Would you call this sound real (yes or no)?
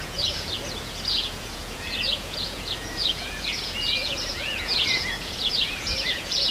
no